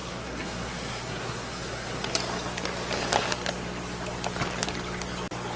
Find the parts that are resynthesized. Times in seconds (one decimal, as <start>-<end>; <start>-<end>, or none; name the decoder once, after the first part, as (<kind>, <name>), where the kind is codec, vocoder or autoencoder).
0.0-2.1 (codec, SNAC)